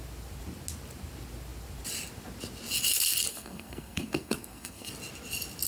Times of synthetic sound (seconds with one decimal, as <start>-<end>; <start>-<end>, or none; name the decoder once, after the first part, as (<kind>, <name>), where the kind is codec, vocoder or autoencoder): 3.3-4.9 (codec, SNAC)